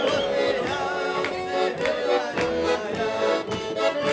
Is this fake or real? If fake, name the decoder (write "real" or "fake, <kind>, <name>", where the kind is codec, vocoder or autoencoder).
real